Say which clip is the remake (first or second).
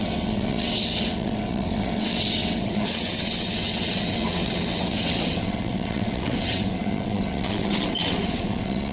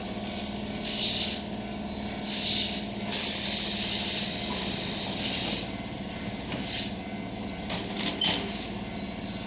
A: first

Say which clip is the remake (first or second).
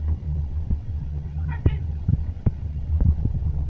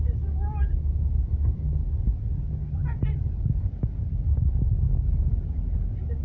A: first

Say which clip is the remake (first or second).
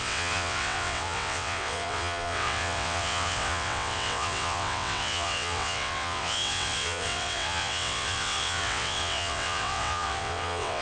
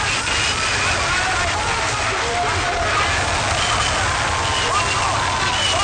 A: first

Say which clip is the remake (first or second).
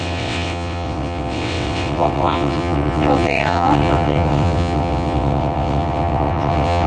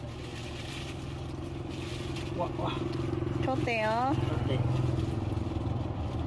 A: first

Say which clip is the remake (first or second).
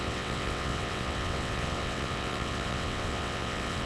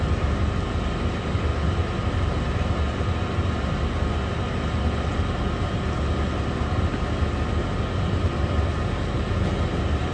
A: first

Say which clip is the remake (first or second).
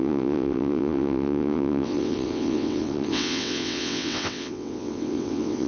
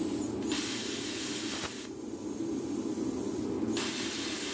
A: first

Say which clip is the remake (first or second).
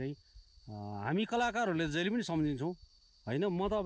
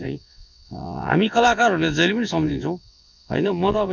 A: second